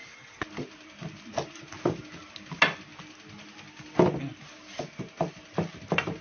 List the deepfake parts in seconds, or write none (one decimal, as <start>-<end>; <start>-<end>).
none